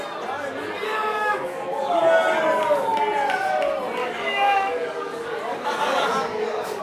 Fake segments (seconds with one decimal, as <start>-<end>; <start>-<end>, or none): 1.1-2.0; 4.0-6.8